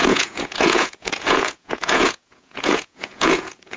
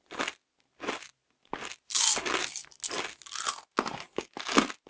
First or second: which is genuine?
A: second